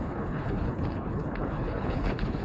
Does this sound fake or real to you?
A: fake